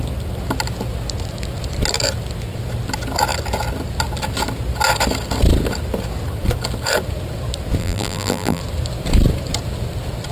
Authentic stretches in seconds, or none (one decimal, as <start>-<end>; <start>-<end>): 0.0-7.8; 8.6-10.3